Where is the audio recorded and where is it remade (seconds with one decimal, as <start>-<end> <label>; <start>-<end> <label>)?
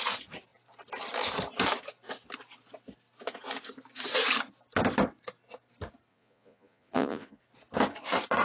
0.0-6.1 recorded; 6.1-7.4 remade; 7.4-8.4 recorded